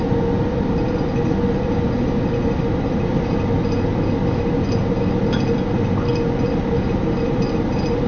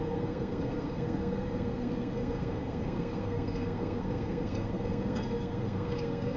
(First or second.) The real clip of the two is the first